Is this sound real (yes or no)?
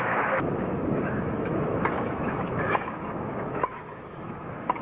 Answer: no